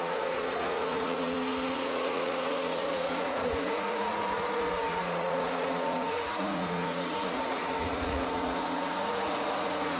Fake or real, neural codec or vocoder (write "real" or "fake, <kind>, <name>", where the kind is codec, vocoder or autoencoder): fake, vocoder, Vocos